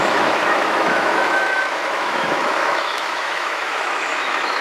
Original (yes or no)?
no